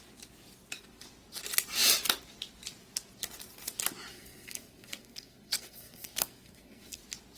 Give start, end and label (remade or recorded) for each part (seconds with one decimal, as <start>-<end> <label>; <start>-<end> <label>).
0.0-4.1 recorded; 4.1-7.0 remade; 7.0-7.4 recorded